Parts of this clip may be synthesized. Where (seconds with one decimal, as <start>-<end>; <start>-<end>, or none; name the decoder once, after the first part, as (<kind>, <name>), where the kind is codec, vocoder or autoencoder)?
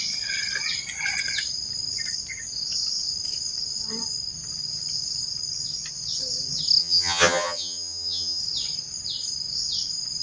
6.8-8.4 (vocoder, HiFi-GAN)